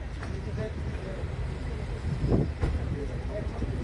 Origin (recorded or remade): remade